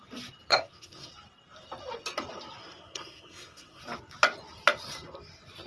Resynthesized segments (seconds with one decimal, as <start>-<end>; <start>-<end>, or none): 0.5-1.1; 2.6-3.8